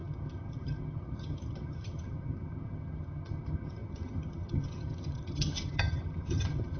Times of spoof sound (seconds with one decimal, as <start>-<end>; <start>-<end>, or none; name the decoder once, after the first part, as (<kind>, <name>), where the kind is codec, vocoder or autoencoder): 0.0-6.8 (vocoder, HiFi-GAN)